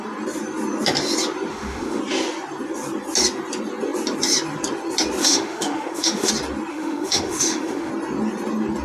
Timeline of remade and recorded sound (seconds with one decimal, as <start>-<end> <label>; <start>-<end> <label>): 0.0-1.5 recorded; 1.5-2.0 remade; 2.0-5.2 recorded; 5.2-6.3 remade; 6.3-6.7 recorded; 6.7-7.9 remade; 7.9-8.8 recorded